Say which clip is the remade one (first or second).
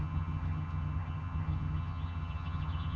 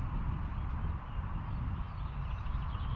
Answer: first